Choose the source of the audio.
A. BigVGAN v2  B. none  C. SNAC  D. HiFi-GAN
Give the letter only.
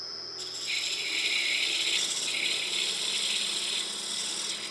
B